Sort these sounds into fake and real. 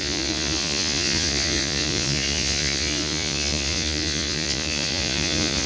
fake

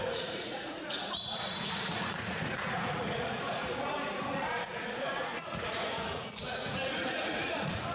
fake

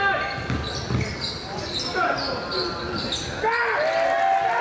real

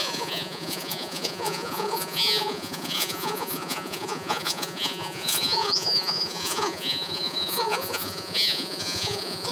fake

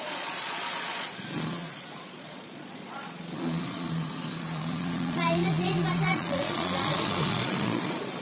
fake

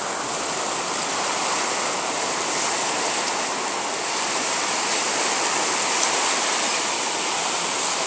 real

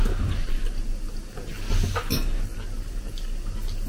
real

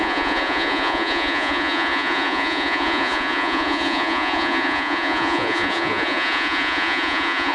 fake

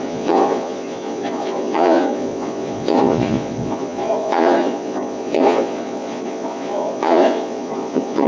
fake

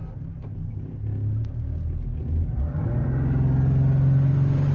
real